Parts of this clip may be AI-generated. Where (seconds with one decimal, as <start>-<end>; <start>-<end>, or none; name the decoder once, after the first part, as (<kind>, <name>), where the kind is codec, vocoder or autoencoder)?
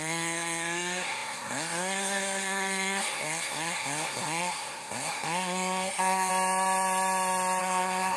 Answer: 0.0-6.3 (codec, SNAC); 7.6-8.2